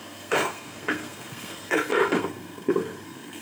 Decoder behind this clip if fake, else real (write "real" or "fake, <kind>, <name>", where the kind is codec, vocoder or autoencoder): fake, codec, SNAC